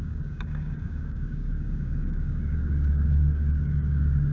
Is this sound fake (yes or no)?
yes